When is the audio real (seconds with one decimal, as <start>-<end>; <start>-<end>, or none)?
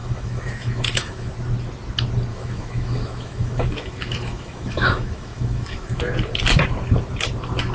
1.3-2.3; 6.0-7.7